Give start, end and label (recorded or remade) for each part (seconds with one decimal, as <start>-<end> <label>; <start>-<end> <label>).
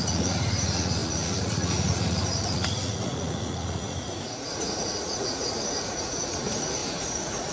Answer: 0.0-7.5 remade